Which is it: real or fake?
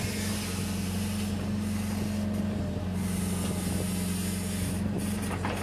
real